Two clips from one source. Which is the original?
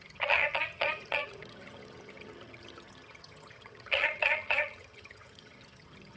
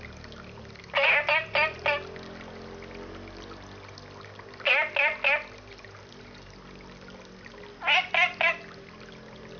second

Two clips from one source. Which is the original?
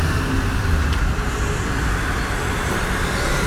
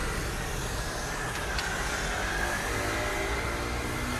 second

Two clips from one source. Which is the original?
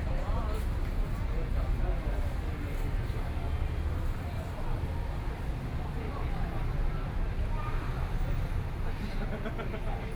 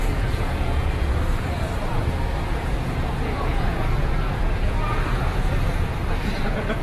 first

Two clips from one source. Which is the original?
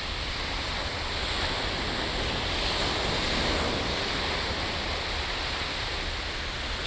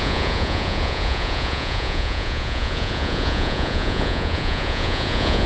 first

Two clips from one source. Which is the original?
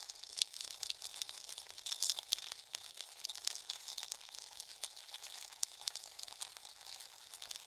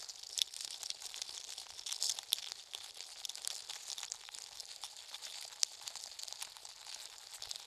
second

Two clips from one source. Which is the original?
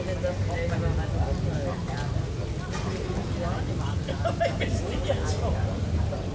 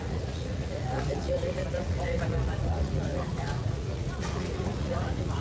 first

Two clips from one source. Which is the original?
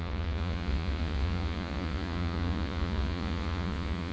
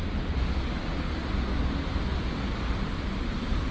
second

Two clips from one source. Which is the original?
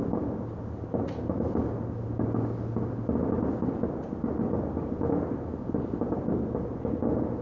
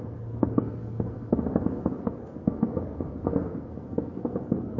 first